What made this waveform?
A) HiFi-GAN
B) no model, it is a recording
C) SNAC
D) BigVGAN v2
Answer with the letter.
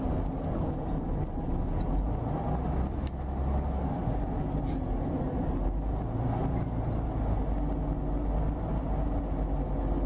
B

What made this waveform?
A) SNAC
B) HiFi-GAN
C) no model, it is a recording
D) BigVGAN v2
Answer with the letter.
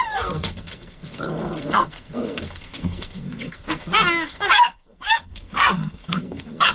A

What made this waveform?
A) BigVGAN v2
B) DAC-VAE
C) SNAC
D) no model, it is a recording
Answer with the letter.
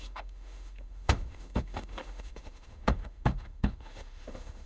B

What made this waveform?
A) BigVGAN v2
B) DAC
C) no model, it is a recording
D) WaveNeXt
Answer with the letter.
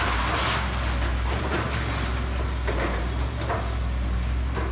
C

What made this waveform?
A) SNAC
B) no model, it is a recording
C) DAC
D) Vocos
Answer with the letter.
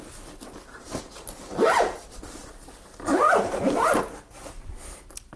B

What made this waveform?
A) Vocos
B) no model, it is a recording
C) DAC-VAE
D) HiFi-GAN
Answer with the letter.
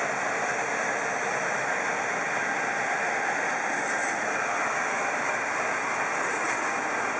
B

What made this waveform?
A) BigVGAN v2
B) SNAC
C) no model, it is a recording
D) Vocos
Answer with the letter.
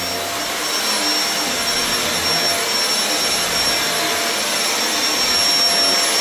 C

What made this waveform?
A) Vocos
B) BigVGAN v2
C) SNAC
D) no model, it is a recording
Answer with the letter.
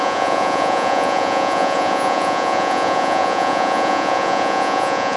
A